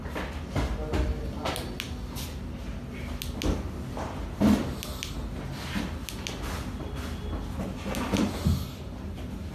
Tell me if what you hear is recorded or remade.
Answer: recorded